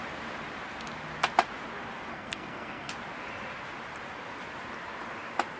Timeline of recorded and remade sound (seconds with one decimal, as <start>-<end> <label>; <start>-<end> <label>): 0.0-2.1 recorded; 2.1-2.9 remade; 2.9-5.6 recorded